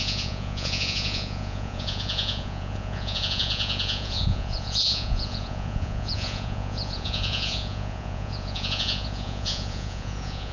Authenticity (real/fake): fake